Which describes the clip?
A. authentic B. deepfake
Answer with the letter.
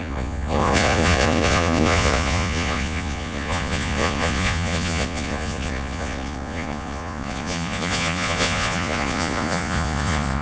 B